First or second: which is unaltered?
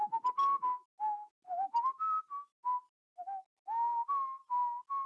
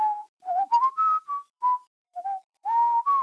first